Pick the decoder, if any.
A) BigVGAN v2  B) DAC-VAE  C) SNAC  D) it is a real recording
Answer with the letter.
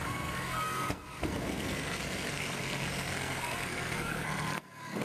C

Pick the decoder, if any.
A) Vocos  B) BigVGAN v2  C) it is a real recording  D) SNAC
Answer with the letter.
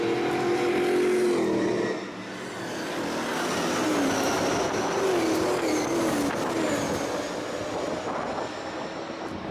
C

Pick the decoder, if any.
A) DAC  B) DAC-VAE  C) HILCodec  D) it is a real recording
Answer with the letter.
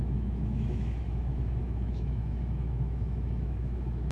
B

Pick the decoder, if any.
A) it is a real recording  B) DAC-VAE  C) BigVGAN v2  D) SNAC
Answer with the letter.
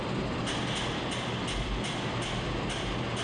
A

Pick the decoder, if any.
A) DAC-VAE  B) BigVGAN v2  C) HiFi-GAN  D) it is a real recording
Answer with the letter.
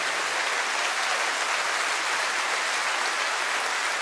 D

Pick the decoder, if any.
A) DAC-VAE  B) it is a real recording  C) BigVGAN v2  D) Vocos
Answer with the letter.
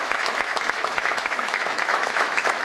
A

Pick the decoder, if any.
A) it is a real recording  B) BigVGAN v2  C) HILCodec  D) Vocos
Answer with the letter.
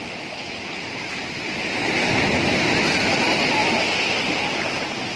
A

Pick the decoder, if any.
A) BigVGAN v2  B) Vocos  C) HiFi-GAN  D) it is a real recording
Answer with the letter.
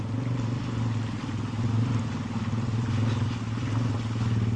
D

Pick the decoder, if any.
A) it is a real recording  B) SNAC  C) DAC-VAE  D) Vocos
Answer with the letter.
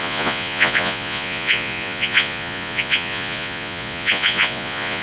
D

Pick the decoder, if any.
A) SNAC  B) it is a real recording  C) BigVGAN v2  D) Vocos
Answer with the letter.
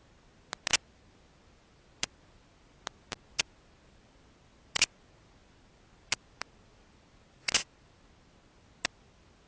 B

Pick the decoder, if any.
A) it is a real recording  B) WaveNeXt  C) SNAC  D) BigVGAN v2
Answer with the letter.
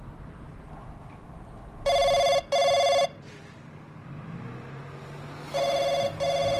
A